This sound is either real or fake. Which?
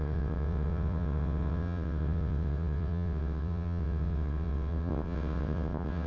fake